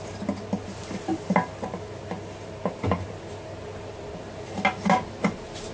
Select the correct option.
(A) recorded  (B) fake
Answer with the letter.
A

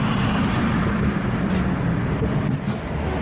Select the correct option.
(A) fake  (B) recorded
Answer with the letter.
B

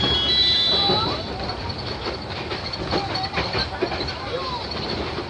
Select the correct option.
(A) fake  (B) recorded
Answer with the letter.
B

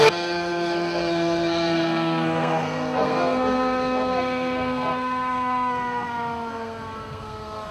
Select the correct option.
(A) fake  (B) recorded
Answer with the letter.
A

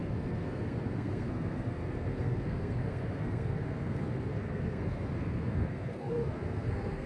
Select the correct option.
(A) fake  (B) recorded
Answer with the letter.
A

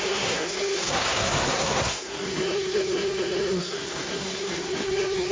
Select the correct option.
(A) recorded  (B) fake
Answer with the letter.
B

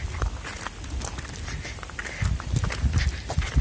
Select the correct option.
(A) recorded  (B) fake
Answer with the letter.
A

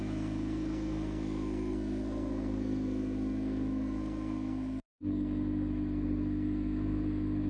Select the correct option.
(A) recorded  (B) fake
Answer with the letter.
B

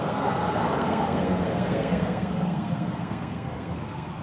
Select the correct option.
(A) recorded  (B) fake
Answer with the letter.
B